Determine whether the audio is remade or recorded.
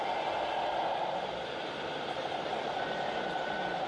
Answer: recorded